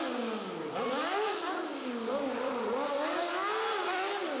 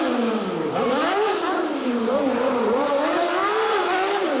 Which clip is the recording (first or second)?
first